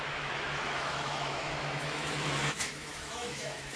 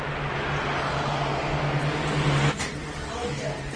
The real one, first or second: second